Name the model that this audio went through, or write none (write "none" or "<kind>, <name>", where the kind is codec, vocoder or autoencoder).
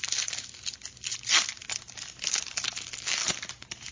none